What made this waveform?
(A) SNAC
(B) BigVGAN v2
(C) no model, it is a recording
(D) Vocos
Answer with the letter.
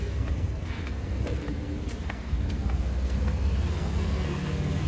A